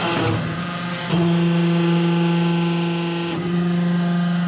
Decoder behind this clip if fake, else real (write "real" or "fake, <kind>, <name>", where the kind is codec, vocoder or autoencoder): real